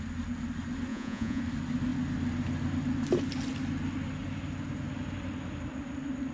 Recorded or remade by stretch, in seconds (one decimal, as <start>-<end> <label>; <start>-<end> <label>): 0.0-0.9 recorded; 0.9-1.4 remade; 1.4-6.3 recorded